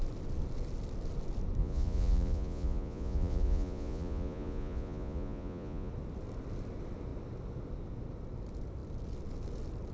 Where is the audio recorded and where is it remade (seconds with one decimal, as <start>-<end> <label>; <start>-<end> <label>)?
0.0-1.6 recorded; 1.6-5.9 remade; 5.9-9.9 recorded